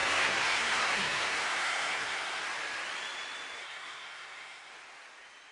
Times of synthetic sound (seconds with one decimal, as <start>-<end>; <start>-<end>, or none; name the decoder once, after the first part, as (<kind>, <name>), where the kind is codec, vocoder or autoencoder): 0.0-2.4 (codec, SNAC); 3.6-4.7